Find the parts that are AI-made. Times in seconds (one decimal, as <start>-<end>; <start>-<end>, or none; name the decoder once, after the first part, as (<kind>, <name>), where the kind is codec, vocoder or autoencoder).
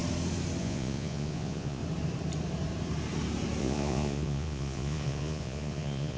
0.6-1.8 (vocoder, Vocos); 3.6-6.2